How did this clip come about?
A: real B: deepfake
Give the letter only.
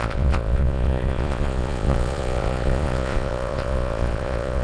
B